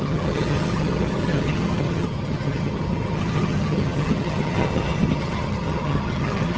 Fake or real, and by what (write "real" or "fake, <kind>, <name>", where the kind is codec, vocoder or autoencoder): fake, vocoder, HiFi-GAN